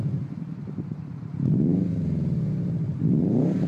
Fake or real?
fake